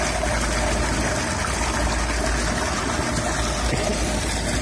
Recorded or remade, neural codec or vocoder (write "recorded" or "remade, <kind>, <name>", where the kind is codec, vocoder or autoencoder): recorded